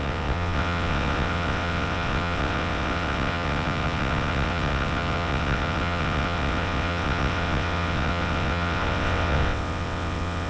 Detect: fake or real fake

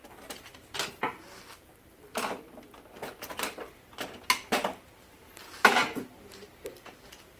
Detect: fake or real real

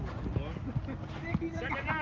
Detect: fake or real real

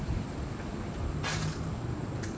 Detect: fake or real real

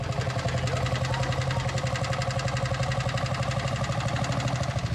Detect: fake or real real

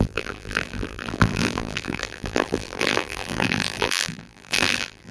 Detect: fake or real fake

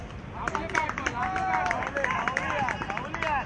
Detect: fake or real real